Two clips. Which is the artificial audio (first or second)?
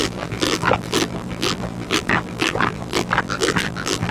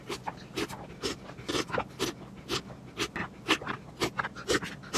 first